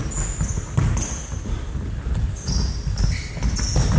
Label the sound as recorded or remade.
recorded